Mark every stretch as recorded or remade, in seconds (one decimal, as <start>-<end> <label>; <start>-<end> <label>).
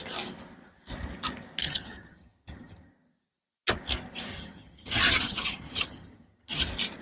0.0-1.6 recorded; 1.6-2.9 remade; 2.9-4.3 recorded; 4.3-6.6 remade; 6.6-7.0 recorded